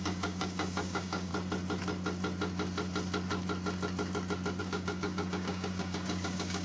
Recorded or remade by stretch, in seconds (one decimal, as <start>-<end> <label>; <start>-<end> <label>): 0.0-1.3 remade; 1.3-4.6 recorded; 4.6-6.6 remade